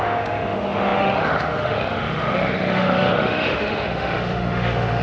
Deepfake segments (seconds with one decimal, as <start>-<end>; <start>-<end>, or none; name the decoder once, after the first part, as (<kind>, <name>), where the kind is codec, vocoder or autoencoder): 0.0-5.0 (autoencoder, DAC-VAE)